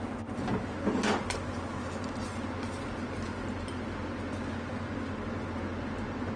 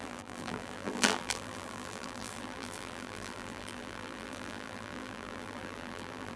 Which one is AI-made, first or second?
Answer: second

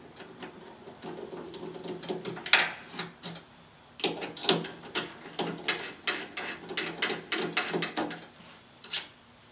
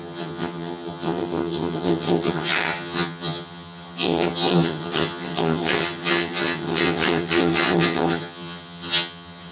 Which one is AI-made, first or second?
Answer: second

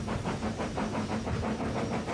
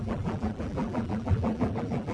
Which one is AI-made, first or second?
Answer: second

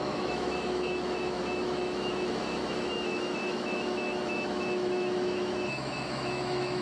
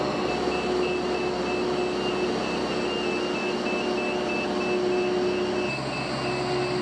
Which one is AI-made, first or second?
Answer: first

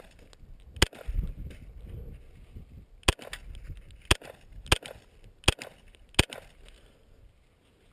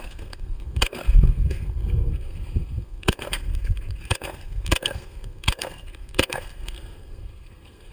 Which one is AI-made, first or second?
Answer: second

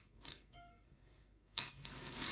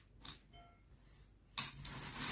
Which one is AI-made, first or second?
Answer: first